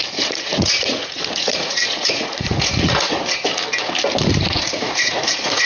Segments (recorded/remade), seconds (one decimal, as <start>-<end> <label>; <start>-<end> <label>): 0.0-3.5 remade; 3.5-4.4 recorded; 4.4-5.7 remade